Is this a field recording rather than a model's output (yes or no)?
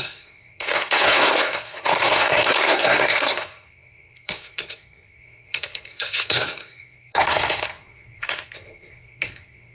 no